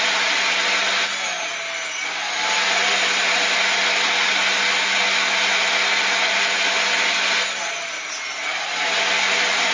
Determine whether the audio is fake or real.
real